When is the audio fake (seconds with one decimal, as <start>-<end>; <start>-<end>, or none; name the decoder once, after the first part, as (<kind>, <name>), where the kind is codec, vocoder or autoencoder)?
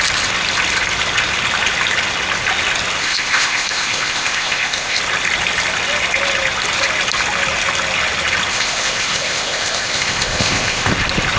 3.0-5.0 (codec, ZipCodec); 8.5-10.9